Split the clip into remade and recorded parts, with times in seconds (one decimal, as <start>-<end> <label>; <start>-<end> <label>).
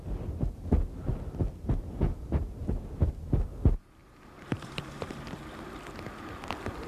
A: 0.0-4.0 recorded; 4.0-5.4 remade; 5.4-6.9 recorded